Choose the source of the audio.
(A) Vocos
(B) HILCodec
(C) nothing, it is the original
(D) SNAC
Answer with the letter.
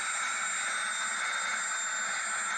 C